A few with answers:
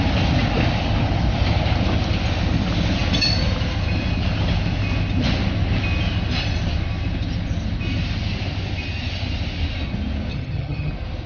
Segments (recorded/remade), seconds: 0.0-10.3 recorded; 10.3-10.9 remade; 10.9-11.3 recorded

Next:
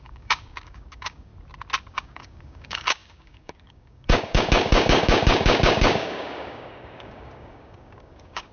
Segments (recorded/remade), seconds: 0.0-1.3 remade; 1.3-1.8 recorded; 1.8-8.5 remade

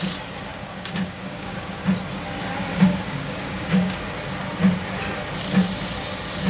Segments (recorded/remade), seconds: 0.0-0.5 recorded; 0.5-1.8 remade; 1.8-2.7 recorded; 2.7-4.0 remade; 4.0-6.5 recorded

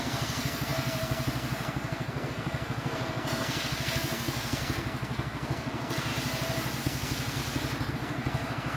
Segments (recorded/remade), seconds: 0.0-6.1 remade; 6.1-6.8 recorded; 6.8-7.4 remade; 7.4-7.9 recorded; 7.9-8.8 remade